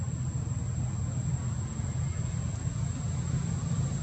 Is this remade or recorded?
recorded